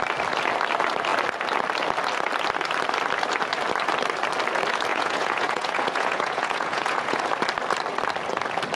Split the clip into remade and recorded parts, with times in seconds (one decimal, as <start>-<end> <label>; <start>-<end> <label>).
0.0-4.9 recorded; 4.9-7.2 remade; 7.2-8.7 recorded